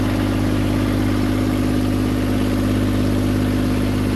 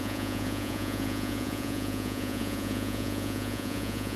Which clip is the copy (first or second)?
second